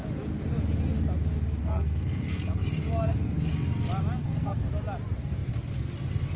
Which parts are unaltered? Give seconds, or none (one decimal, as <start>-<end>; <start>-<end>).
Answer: 0.0-1.6; 2.2-4.2; 4.7-6.4